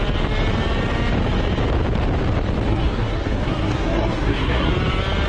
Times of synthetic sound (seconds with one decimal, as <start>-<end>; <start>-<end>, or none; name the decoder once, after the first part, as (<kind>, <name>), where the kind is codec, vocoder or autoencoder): 2.7-4.7 (codec, SNAC)